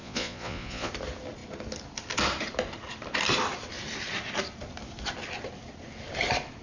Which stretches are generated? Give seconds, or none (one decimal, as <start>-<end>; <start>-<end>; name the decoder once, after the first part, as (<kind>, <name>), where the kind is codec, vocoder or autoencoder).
0.0-0.9 (vocoder, Vocos)